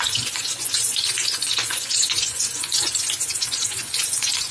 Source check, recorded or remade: remade